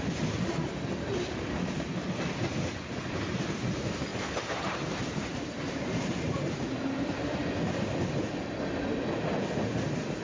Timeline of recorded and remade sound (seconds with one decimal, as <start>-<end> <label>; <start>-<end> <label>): 0.0-4.1 recorded; 4.1-7.4 remade; 7.4-10.2 recorded